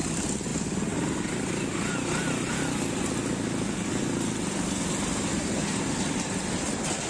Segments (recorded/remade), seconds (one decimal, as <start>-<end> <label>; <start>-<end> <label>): 0.0-7.1 recorded